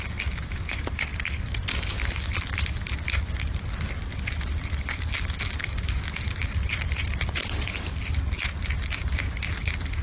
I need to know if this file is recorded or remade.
recorded